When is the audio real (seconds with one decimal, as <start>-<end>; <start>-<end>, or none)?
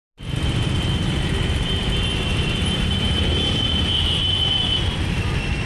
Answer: 0.0-2.3; 3.3-4.2; 4.8-5.7